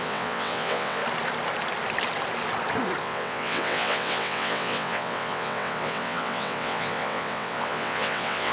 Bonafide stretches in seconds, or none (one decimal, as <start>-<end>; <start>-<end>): 1.0-3.0

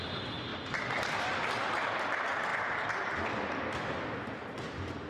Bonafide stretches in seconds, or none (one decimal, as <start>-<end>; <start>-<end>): 0.0-5.1

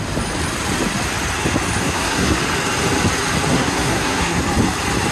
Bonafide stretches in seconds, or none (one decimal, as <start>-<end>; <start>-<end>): 0.0-1.8; 2.4-3.5; 4.4-5.1

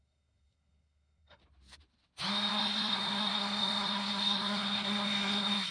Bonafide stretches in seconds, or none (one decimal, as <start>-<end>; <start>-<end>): 1.4-2.5

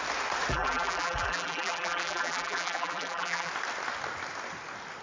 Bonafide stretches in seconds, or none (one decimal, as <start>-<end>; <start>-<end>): 0.0-0.5; 3.5-5.0

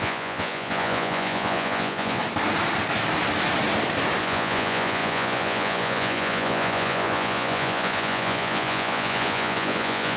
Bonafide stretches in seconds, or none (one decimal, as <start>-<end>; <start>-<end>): 2.2-4.2